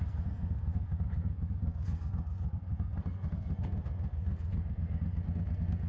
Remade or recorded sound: remade